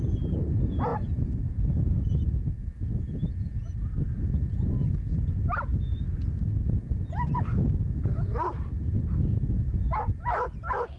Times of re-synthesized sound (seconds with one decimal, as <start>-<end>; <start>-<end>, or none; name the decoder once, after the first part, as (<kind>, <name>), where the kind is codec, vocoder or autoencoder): none

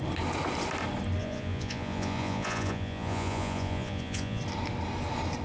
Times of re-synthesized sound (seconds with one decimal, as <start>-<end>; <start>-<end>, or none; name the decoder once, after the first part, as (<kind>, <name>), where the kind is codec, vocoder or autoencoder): 1.2-4.4 (vocoder, Vocos)